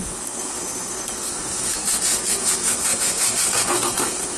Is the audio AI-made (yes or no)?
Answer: yes